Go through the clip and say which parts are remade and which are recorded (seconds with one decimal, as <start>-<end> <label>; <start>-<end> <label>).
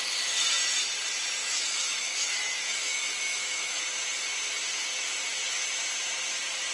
0.0-1.4 recorded; 1.4-3.8 remade; 3.8-6.7 recorded